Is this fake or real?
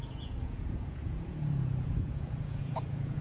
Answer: fake